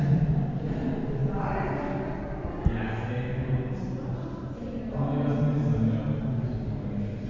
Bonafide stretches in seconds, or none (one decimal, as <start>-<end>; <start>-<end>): 0.0-7.3